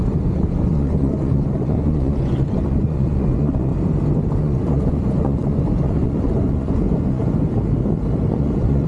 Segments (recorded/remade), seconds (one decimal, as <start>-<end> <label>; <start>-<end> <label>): 0.0-3.7 remade; 3.7-4.4 recorded; 4.4-7.2 remade; 7.2-8.3 recorded; 8.3-8.9 remade